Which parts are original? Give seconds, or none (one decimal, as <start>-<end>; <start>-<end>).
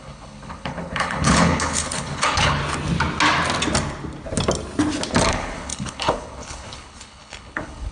2.6-5.3